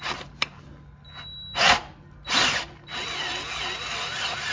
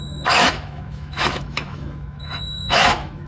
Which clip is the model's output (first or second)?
second